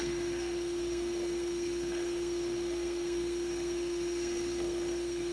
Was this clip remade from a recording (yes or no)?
yes